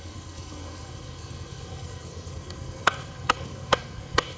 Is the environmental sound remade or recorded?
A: remade